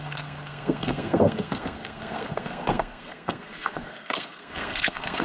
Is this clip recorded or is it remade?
remade